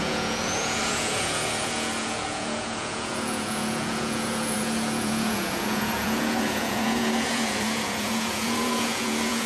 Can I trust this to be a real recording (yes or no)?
no